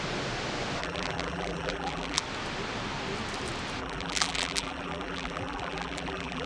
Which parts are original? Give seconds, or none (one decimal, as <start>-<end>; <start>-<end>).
0.0-0.8; 2.2-3.8